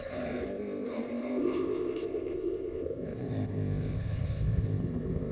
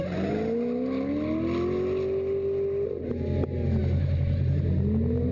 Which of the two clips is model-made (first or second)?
first